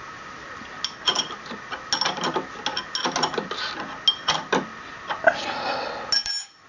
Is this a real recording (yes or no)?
yes